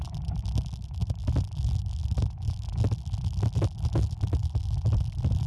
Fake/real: real